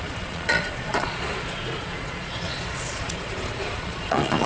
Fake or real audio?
fake